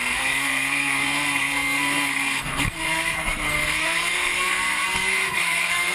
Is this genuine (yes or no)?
no